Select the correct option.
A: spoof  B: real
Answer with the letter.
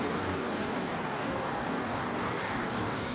A